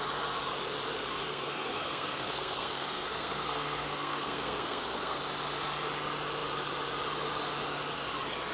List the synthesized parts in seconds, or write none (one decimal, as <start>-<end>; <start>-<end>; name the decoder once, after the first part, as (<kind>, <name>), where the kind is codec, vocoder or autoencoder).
1.2-5.2 (codec, SNAC)

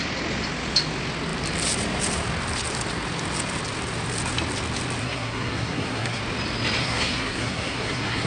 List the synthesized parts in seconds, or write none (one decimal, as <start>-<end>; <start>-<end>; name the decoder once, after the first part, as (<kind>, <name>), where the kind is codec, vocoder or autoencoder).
5.0-6.2 (codec, SNAC); 6.8-8.3